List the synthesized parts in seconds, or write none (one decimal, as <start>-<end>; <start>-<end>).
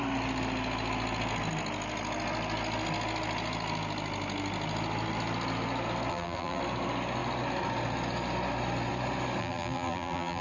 6.1-6.6; 9.4-10.4